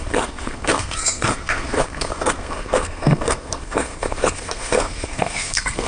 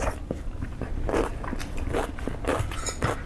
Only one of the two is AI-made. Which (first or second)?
first